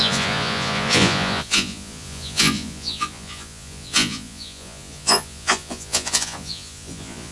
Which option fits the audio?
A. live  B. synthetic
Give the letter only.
B